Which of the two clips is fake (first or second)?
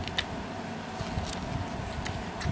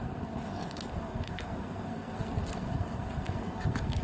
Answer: second